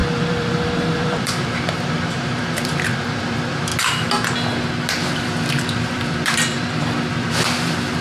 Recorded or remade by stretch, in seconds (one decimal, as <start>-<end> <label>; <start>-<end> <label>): 0.0-3.7 remade; 3.7-5.1 recorded; 5.1-8.0 remade